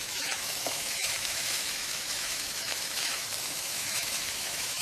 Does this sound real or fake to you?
fake